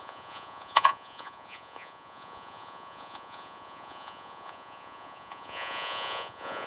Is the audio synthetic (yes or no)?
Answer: yes